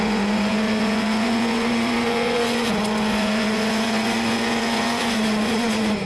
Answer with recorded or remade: remade